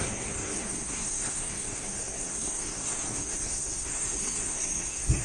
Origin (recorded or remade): remade